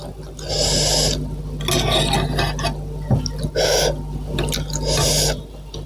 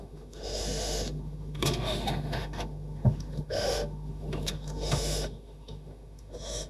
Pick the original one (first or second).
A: first